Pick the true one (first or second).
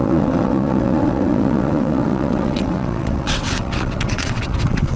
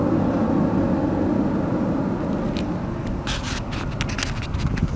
second